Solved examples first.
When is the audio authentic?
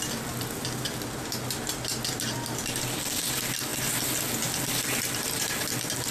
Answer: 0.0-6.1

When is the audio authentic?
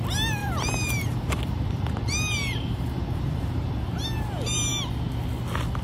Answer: 0.0-0.4; 3.9-5.8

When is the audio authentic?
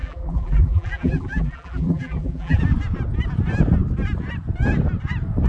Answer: 2.6-5.5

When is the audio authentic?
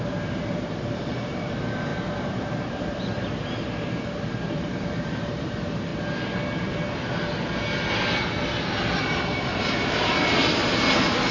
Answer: 5.9-9.0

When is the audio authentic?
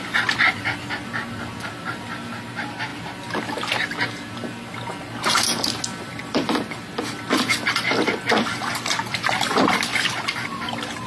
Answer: 0.0-6.2; 8.6-11.1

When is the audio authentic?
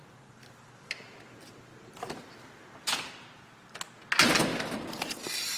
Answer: 3.4-4.5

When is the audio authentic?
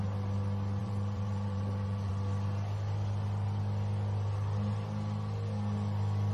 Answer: 0.0-0.8; 2.1-6.3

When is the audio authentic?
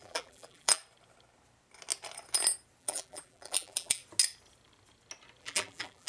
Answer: 0.8-2.8; 4.0-5.4